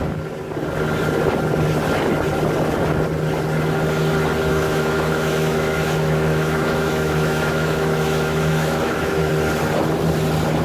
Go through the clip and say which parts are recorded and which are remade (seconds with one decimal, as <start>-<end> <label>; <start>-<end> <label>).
0.0-4.5 recorded; 4.5-9.3 remade; 9.3-10.6 recorded